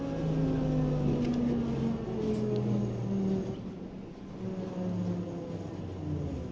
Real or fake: real